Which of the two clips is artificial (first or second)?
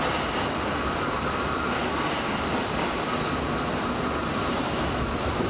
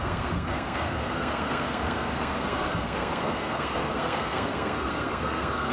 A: second